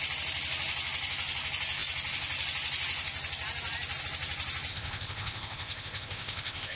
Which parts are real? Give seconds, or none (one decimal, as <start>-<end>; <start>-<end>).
0.0-4.7